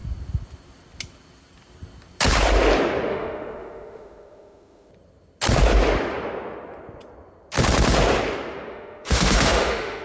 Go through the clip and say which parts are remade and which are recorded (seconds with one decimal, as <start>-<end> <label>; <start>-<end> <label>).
0.0-3.1 recorded; 3.1-4.9 remade; 4.9-8.7 recorded; 8.7-10.0 remade